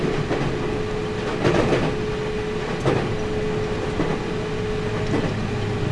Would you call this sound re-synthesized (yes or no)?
no